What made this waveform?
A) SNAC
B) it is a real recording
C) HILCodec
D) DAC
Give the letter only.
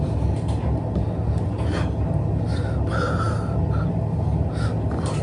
B